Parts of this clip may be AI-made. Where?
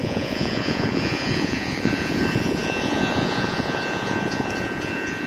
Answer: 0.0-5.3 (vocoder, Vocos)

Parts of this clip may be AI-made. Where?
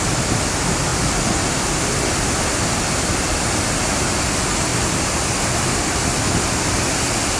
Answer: none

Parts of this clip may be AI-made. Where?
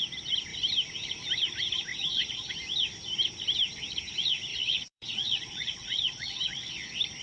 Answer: 1.9-2.5 (vocoder, Vocos); 4.5-6.7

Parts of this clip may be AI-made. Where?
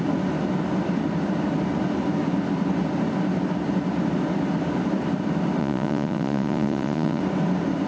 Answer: 5.6-7.2 (vocoder, Vocos)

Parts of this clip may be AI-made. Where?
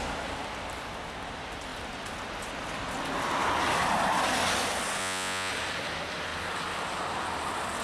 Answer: 5.0-5.5 (vocoder, Vocos)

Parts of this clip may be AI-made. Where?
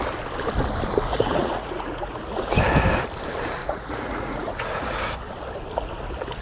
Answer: 1.1-2.6 (vocoder, Vocos); 3.6-5.0